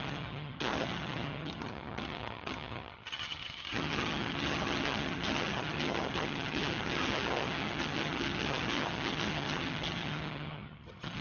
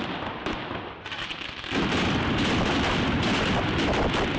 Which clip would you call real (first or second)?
second